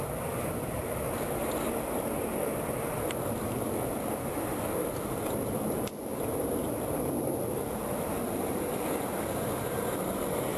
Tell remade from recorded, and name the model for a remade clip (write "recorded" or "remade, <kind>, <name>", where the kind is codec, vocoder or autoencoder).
recorded